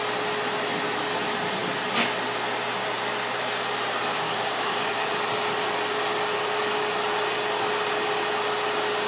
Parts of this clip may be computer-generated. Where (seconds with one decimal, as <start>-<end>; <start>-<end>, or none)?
4.1-5.1